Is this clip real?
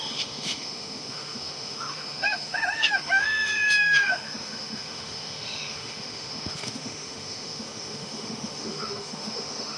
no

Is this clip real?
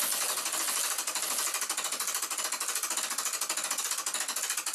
yes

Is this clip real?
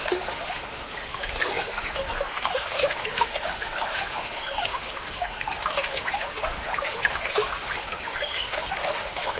no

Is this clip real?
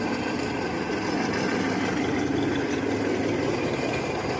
yes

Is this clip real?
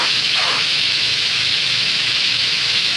no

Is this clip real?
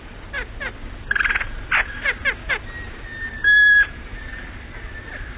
yes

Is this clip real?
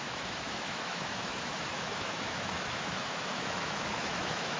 no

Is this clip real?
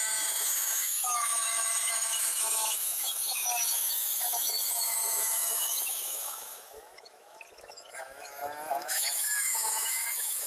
no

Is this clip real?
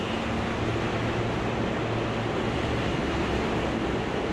yes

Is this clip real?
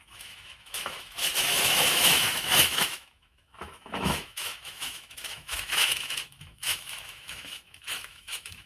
no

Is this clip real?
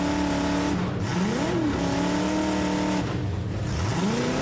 yes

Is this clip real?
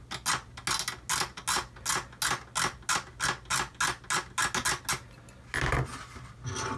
yes